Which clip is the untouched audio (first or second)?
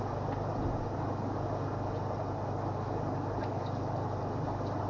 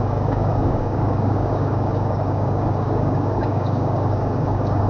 first